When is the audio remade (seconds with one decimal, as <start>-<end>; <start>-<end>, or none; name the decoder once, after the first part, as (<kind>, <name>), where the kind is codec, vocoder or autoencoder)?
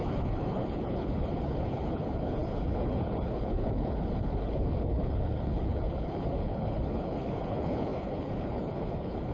0.0-9.3 (codec, HILCodec)